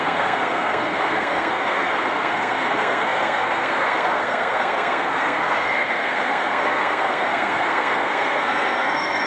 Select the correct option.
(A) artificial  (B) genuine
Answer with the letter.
A